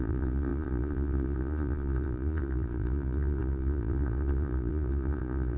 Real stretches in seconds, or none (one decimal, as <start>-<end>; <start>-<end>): none